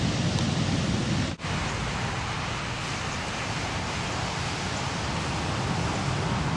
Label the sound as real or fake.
real